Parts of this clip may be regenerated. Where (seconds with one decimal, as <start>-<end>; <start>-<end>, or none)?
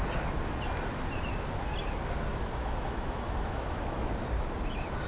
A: 2.6-4.1